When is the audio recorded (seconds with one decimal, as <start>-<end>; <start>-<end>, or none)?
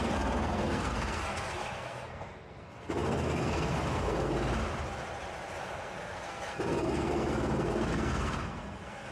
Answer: 4.3-5.6